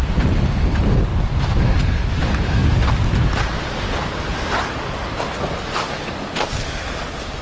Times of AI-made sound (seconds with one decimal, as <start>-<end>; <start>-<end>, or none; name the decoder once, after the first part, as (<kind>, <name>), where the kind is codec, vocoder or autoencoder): 0.0-1.1 (vocoder, BigVGAN v2); 2.2-2.6; 3.3-7.4